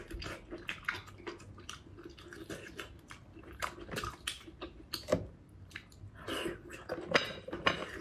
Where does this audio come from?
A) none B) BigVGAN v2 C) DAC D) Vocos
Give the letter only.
A